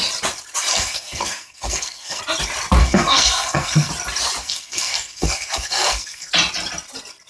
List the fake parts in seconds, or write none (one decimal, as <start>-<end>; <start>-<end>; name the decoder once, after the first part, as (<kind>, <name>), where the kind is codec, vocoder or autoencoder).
0.7-2.2 (codec, SNAC); 2.8-3.9; 4.4-6.3